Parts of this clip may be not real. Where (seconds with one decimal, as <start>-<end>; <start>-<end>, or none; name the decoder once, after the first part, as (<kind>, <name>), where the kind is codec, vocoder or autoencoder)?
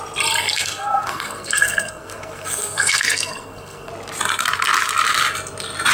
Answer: 0.4-3.9 (codec, SNAC)